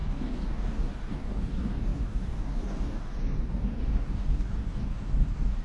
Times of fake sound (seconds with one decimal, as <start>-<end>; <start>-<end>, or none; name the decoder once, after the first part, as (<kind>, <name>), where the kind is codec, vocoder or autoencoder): 0.0-5.6 (codec, DAC)